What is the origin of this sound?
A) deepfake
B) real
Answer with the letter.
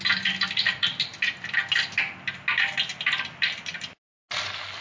B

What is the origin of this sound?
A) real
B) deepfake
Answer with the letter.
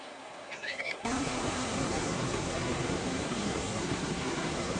B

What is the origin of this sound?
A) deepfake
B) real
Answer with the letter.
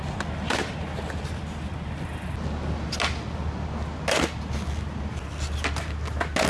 B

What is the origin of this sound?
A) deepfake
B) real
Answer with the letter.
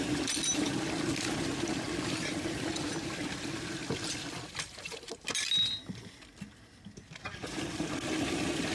B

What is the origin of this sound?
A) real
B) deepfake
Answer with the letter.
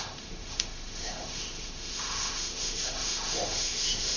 B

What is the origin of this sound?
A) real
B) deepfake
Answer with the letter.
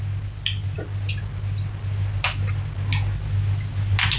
A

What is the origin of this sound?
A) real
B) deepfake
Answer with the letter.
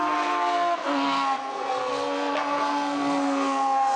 B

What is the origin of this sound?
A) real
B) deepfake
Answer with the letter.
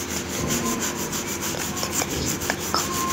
B